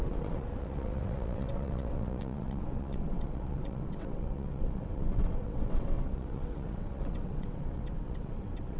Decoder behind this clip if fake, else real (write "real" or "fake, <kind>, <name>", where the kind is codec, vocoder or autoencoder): fake, vocoder, WaveNeXt